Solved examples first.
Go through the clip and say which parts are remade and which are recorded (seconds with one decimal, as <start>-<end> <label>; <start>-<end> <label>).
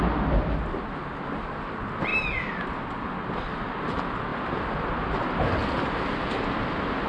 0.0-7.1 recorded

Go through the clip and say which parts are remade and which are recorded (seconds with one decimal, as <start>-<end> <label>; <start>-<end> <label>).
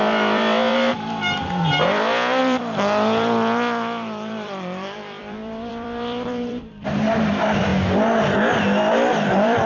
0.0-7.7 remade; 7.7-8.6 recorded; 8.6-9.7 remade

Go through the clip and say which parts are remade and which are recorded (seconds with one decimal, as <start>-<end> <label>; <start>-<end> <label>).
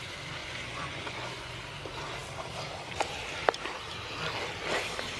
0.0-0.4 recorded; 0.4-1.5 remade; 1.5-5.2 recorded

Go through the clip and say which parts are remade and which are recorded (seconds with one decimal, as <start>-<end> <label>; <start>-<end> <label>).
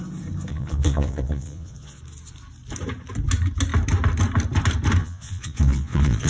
0.0-0.5 recorded; 0.5-2.0 remade; 2.0-5.0 recorded; 5.0-6.3 remade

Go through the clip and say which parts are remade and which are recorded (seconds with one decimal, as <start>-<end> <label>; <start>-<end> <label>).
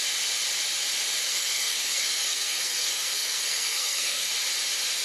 0.0-1.3 recorded; 1.3-4.3 remade; 4.3-5.0 recorded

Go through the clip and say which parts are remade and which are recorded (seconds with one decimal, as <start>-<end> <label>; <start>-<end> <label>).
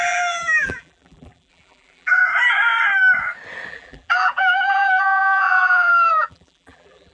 0.0-2.2 remade; 2.2-3.7 recorded; 3.7-7.1 remade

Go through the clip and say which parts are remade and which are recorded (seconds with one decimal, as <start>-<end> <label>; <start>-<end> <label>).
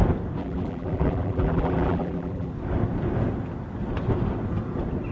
0.0-0.4 recorded; 0.4-2.5 remade; 2.5-5.1 recorded